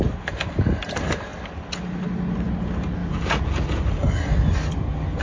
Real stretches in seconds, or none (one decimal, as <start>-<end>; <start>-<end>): 0.0-3.0; 3.8-5.2